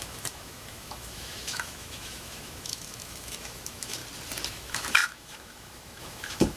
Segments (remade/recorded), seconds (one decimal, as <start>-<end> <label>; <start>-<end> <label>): 0.0-4.0 remade; 4.0-4.5 recorded; 4.5-6.6 remade